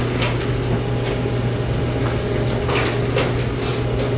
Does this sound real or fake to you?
real